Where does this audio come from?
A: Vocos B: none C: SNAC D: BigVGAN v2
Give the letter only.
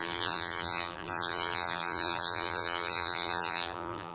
D